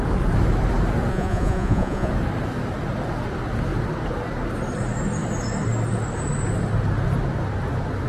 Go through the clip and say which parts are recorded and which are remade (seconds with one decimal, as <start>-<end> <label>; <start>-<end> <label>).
0.0-1.1 recorded; 1.1-2.1 remade; 2.1-8.1 recorded